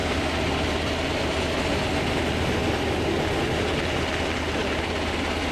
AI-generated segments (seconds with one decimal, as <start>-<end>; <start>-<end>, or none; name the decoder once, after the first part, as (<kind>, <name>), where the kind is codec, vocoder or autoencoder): 4.6-5.5 (vocoder, BigVGAN v2)